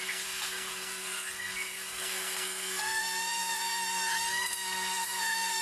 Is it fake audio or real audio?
fake